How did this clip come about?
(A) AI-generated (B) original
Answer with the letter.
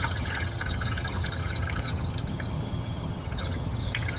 A